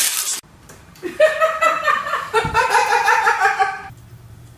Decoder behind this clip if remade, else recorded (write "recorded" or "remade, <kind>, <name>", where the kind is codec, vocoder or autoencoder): remade, vocoder, BigVGAN v2